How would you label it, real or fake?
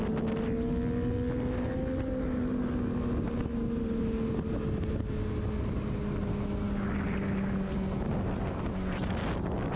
real